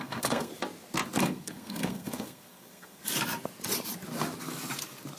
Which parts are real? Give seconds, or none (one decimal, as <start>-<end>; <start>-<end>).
0.5-1.2; 3.0-5.2